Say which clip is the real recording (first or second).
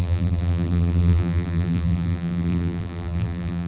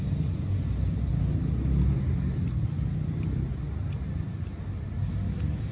second